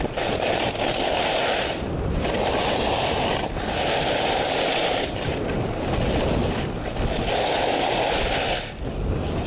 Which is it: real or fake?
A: real